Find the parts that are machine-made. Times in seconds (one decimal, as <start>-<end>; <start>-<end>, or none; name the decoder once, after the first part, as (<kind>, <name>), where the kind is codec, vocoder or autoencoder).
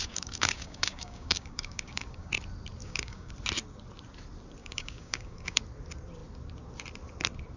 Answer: 0.0-2.3 (codec, DAC); 2.8-3.3; 4.6-5.6